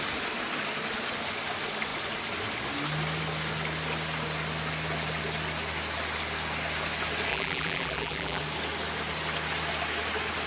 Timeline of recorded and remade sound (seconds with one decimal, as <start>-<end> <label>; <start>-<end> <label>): 0.0-7.3 recorded; 7.3-8.4 remade; 8.4-10.5 recorded